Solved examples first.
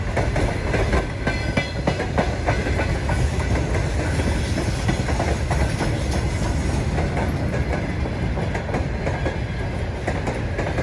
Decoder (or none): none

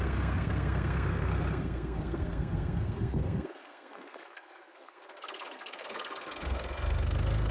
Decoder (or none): codec, SNAC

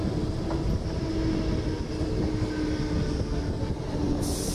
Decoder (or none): none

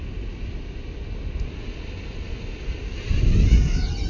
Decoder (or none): none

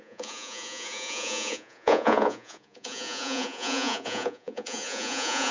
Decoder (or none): vocoder, Vocos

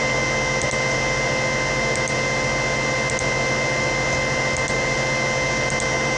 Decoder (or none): none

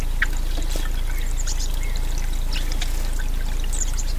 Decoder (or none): none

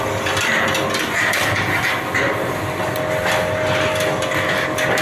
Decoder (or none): none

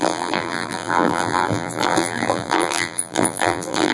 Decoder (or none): vocoder, BigVGAN v2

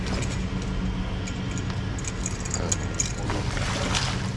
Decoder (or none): none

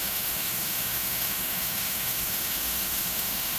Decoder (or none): autoencoder, DAC-VAE